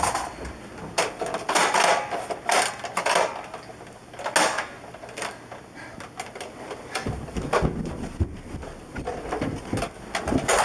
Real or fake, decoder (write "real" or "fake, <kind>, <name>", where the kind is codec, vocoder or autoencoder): real